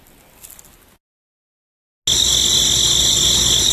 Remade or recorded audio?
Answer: recorded